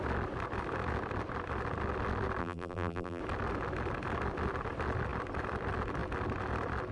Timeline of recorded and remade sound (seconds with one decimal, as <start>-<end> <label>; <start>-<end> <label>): 0.0-2.4 recorded; 2.4-3.2 remade; 3.2-6.9 recorded